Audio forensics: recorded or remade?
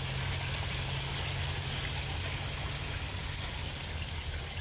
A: recorded